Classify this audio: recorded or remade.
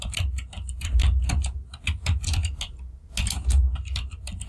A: recorded